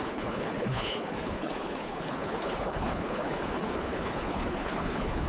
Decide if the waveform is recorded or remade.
remade